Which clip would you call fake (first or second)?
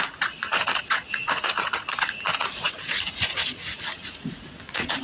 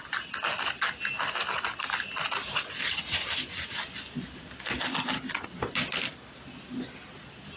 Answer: first